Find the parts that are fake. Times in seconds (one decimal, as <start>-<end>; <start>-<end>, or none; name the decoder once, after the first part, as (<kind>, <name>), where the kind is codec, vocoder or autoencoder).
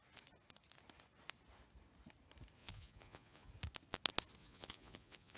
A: 2.6-3.5 (vocoder, Vocos); 4.4-5.4